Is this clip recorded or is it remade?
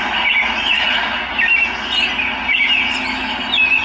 recorded